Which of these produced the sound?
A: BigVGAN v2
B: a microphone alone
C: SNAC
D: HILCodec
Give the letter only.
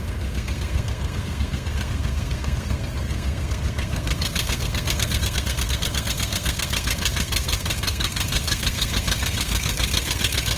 C